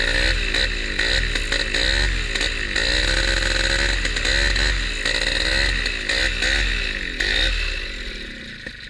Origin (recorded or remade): recorded